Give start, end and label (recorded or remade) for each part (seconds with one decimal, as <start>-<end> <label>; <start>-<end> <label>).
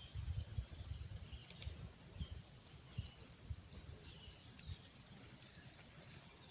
0.0-6.5 recorded